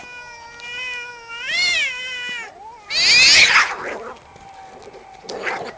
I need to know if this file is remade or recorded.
recorded